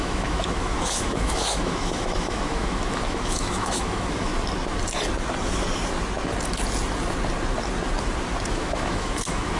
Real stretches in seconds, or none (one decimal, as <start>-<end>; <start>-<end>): 4.3-8.5